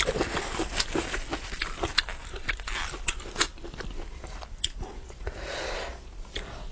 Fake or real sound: real